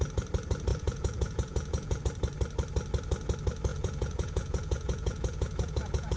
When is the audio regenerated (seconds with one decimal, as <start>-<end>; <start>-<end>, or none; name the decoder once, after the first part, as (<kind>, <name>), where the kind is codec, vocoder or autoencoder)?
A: 0.7-2.0 (vocoder, Vocos); 3.7-6.2

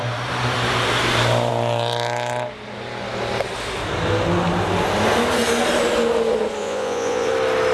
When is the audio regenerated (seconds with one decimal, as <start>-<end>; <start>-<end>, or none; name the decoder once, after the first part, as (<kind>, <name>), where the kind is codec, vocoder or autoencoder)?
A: 6.6-7.3 (vocoder, Vocos)

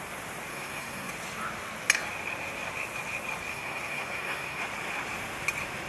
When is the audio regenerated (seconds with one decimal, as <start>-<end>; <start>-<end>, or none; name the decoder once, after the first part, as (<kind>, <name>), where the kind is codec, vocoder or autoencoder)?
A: 0.5-1.1 (codec, SNAC); 3.5-4.6

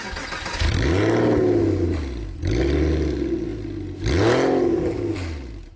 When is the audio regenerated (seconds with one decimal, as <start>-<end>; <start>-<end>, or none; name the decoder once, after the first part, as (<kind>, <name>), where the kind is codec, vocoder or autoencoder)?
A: none

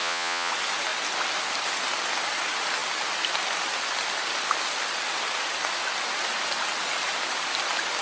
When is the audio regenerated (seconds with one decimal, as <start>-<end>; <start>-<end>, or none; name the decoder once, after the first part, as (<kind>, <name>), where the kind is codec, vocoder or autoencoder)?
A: 0.0-0.5 (vocoder, Vocos)